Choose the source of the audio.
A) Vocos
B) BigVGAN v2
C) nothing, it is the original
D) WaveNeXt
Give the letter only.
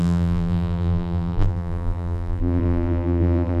B